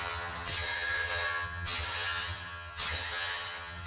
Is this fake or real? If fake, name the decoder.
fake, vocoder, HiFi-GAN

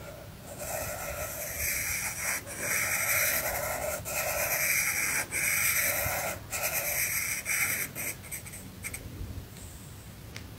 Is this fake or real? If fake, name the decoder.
real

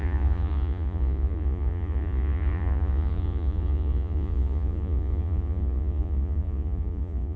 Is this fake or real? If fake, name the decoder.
fake, vocoder, Vocos